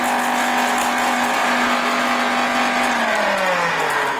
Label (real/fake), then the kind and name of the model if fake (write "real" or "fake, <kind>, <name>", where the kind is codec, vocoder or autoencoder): real